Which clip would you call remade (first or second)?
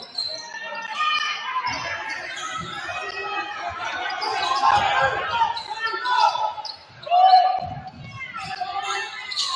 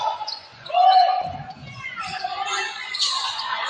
second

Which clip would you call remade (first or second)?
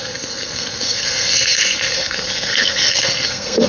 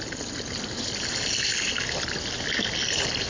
first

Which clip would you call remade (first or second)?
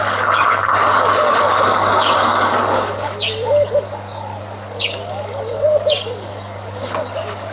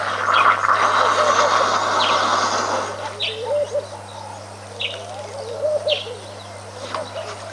first